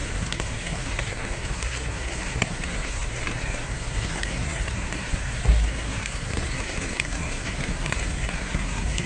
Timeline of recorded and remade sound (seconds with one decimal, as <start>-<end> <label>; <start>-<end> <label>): 0.0-9.1 remade